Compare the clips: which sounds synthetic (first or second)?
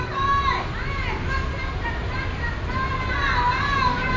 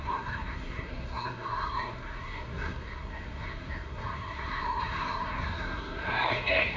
second